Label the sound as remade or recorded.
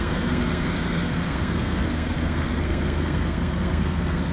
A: remade